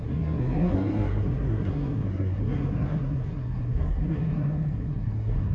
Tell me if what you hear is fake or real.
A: fake